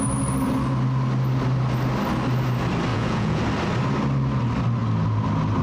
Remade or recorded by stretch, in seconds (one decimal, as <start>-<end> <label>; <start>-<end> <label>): 0.0-2.9 recorded; 2.9-3.4 remade; 3.4-5.6 recorded